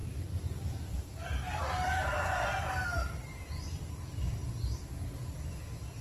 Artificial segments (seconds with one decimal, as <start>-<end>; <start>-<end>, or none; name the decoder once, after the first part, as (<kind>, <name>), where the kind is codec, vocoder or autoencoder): 0.0-0.9 (vocoder, BigVGAN v2); 2.0-2.7